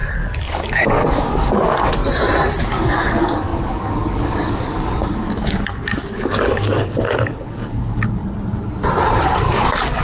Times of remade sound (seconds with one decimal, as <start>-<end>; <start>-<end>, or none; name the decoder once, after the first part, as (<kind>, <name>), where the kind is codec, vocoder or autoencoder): 0.0-2.0 (codec, DAC); 2.6-8.2; 9.4-10.0